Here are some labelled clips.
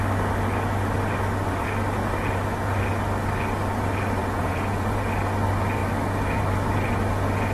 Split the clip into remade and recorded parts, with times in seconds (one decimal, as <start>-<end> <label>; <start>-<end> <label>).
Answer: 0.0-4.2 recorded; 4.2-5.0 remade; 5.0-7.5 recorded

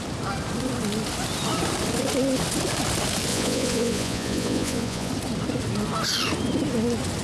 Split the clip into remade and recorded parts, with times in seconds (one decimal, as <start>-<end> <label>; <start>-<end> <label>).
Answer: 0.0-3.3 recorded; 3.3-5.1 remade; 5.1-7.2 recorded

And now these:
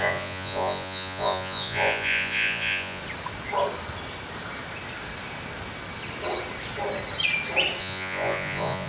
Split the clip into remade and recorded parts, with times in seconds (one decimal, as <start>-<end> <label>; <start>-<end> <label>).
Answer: 0.0-3.0 remade; 3.0-7.8 recorded; 7.8-8.9 remade

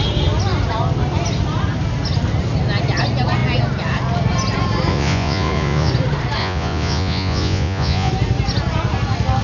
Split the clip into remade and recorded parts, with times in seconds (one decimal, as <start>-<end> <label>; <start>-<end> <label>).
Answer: 0.0-4.9 recorded; 4.9-5.9 remade; 5.9-6.4 recorded; 6.4-8.1 remade; 8.1-9.4 recorded

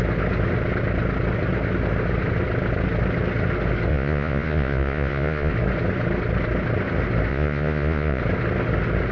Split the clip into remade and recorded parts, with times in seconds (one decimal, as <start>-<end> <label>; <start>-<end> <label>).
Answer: 0.0-3.9 recorded; 3.9-5.5 remade; 5.5-7.3 recorded; 7.3-8.2 remade; 8.2-9.1 recorded